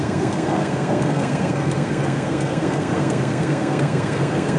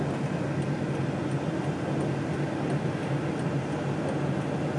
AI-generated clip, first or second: first